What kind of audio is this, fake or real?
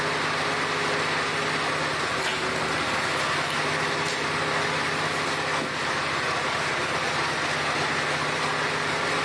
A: real